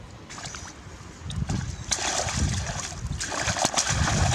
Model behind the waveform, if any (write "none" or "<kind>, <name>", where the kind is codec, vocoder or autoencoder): none